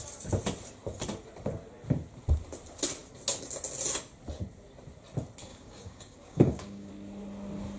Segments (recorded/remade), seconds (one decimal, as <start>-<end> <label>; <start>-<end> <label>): 0.0-5.5 recorded; 5.5-6.9 remade; 6.9-7.8 recorded